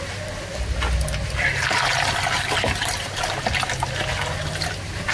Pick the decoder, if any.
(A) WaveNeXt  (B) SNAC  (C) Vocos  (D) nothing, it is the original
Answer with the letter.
D